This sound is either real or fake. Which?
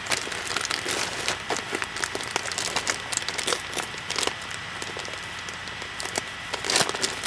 real